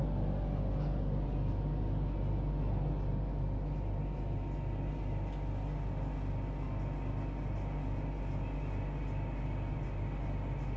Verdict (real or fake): real